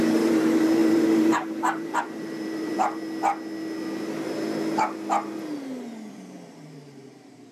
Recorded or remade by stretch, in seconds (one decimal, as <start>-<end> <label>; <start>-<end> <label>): 0.0-3.0 remade; 3.0-6.1 recorded; 6.1-7.5 remade